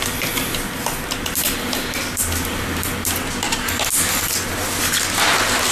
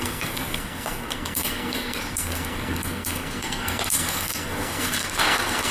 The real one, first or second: first